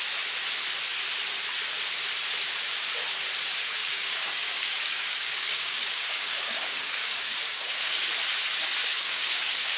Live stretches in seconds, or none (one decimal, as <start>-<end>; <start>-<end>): 0.0-3.8; 8.1-8.8